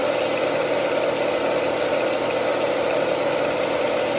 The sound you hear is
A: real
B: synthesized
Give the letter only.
A